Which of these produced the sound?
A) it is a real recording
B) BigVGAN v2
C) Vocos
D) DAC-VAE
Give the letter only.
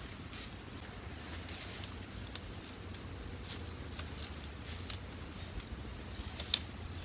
A